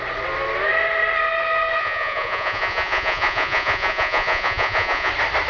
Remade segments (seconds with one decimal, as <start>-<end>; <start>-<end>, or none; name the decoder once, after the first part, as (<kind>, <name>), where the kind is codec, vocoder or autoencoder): 1.8-5.1 (vocoder, Vocos)

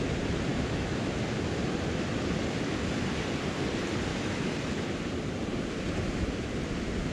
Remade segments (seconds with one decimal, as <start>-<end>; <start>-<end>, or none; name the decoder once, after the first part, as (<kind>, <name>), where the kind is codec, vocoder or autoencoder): 0.5-1.1 (autoencoder, DAC-VAE); 4.1-4.6

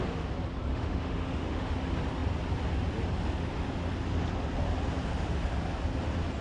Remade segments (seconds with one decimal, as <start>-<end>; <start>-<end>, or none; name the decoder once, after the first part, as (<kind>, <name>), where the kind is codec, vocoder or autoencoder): 0.7-1.7 (autoencoder, DAC-VAE)

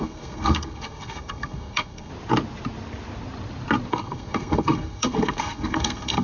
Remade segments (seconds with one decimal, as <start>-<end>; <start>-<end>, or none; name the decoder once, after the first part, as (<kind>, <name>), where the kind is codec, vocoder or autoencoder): 0.0-2.1 (codec, SNAC); 3.9-6.2

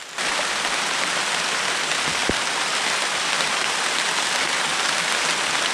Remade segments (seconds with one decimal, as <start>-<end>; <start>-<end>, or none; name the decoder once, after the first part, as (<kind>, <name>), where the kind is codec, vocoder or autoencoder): none

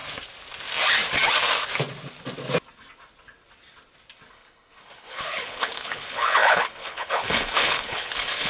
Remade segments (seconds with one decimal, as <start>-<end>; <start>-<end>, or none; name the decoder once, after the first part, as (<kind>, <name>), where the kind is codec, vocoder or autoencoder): 4.3-8.5 (codec, HILCodec)